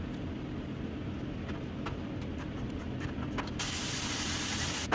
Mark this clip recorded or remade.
recorded